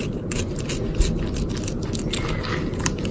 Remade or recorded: recorded